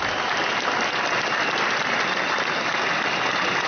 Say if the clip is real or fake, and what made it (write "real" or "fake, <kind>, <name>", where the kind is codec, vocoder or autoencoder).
real